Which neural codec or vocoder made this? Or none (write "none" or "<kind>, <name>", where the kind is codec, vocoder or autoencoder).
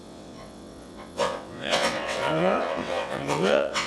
vocoder, WaveNeXt